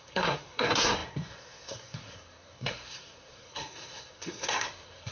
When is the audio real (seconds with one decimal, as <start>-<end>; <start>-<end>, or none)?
none